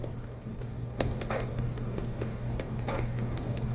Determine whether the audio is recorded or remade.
remade